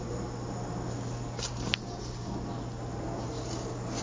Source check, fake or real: real